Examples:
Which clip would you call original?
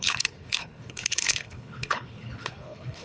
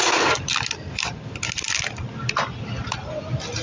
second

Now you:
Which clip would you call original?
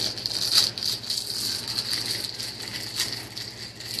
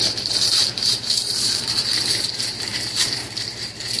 first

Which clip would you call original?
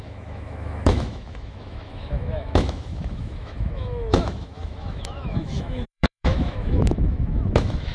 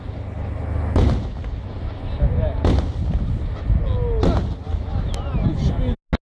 second